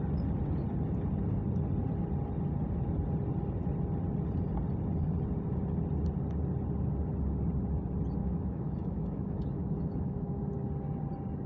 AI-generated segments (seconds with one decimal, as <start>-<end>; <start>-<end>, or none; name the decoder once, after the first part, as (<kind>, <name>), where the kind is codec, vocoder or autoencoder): 8.2-10.4 (autoencoder, DAC-VAE)